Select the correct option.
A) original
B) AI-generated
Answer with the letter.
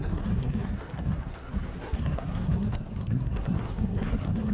B